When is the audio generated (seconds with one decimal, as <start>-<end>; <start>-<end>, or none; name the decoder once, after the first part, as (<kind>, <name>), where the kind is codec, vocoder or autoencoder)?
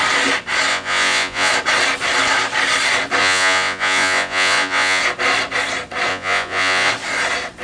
0.7-1.5 (vocoder, Vocos); 3.2-5.0; 6.1-6.9